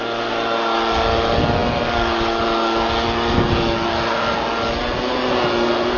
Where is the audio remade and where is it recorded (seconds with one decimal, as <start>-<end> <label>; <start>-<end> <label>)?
0.0-6.0 recorded